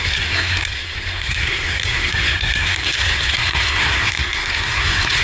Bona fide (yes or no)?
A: no